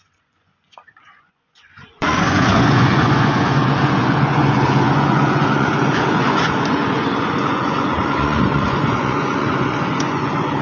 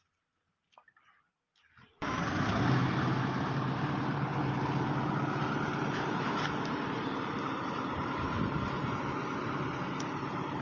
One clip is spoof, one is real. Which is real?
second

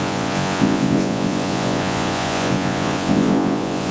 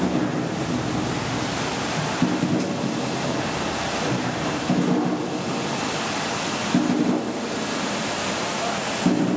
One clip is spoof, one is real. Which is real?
second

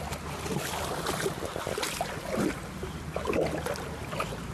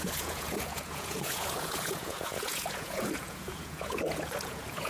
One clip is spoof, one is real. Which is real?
first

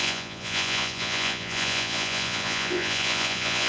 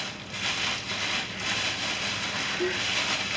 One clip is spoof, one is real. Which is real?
second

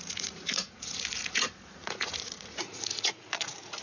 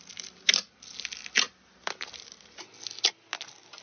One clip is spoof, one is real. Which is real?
second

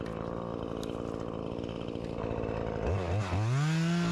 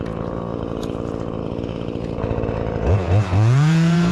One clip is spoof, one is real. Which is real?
first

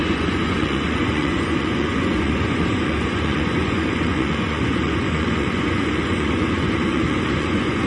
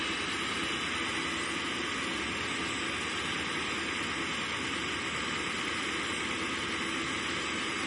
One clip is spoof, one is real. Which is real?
second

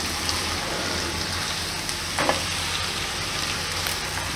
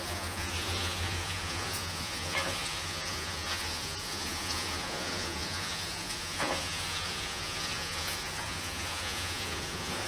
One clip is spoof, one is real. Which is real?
first